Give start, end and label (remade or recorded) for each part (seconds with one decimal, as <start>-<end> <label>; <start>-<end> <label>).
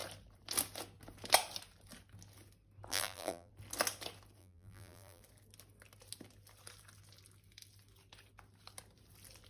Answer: 0.0-2.9 recorded; 2.9-3.5 remade; 3.5-4.4 recorded; 4.4-5.2 remade; 5.2-9.5 recorded